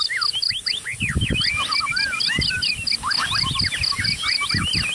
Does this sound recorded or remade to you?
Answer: recorded